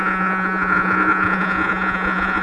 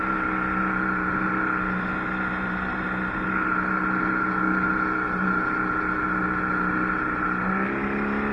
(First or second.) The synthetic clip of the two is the first